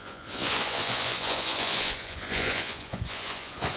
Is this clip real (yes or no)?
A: no